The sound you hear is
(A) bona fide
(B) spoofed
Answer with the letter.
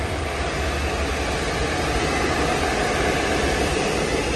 A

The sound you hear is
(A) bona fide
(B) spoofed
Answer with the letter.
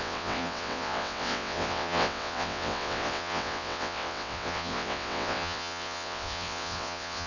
B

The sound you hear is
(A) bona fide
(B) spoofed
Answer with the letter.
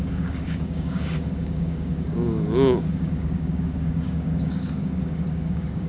B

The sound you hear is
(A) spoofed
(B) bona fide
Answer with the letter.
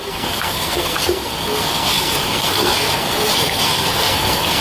A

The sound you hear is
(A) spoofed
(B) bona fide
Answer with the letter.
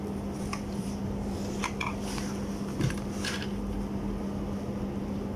B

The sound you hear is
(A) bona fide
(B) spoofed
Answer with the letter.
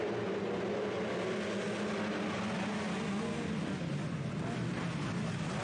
A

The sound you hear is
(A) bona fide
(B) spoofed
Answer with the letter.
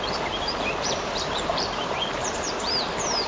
B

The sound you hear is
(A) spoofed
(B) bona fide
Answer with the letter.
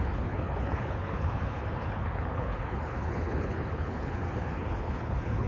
A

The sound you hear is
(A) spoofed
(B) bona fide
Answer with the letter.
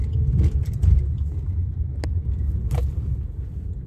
B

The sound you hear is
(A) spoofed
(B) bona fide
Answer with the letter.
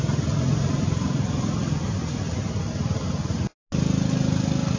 B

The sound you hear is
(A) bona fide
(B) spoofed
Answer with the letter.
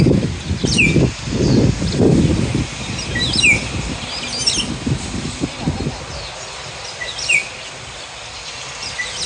A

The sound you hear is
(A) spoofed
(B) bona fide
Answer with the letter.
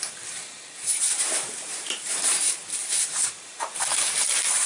A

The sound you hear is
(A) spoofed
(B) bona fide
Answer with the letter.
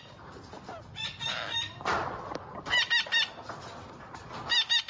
B